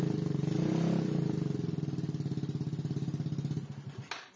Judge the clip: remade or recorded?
recorded